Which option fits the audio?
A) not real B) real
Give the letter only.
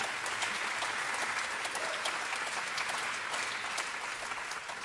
B